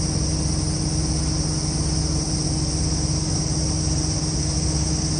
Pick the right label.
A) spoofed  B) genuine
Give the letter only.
B